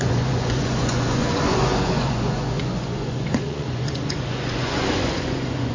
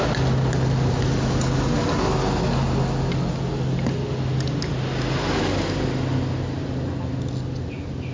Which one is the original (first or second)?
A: second